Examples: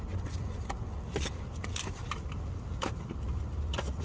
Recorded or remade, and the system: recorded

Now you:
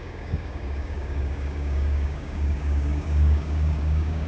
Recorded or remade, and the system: remade, codec, DAC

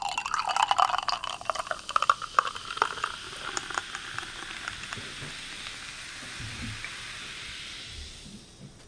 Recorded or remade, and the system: recorded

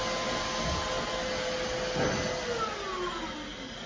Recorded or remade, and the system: recorded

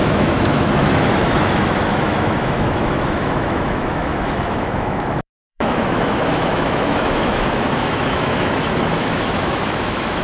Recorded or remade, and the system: remade, autoencoder, DAC-VAE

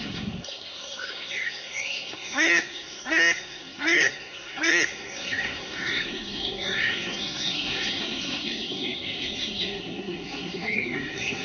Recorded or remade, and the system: remade, codec, SNAC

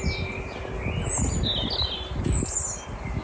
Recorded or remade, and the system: recorded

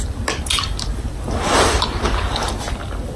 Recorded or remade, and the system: recorded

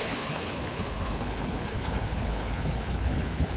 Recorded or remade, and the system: remade, codec, HILCodec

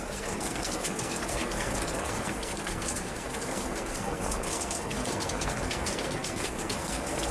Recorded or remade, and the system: remade, codec, SNAC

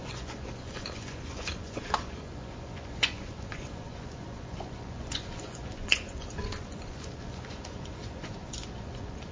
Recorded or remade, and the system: remade, vocoder, Vocos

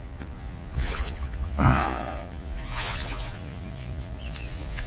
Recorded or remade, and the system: remade, vocoder, Vocos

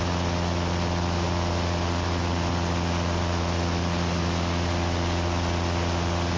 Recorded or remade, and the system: recorded